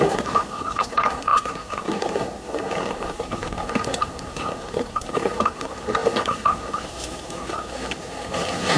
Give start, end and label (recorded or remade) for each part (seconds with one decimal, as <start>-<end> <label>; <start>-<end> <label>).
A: 0.0-8.8 remade